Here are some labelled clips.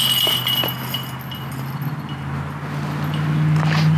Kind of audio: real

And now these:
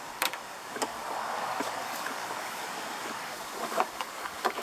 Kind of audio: fake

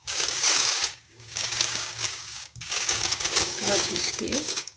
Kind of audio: fake